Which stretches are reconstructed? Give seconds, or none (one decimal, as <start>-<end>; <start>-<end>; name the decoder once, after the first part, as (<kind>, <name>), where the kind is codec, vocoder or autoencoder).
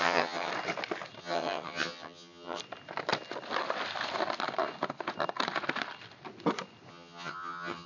0.0-0.5 (vocoder, HiFi-GAN); 1.2-2.6; 6.9-7.9